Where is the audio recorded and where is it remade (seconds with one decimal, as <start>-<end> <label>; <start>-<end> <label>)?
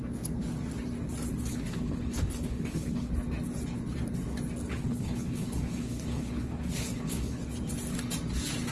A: 0.0-1.5 recorded; 1.5-3.1 remade; 3.1-4.7 recorded; 4.7-7.4 remade; 7.4-8.7 recorded